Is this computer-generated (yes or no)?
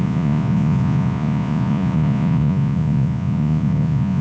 yes